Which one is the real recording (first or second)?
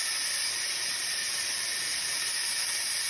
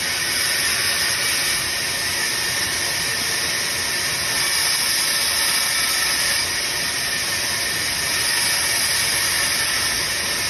second